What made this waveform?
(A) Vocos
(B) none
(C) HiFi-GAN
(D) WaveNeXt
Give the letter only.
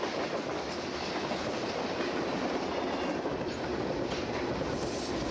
B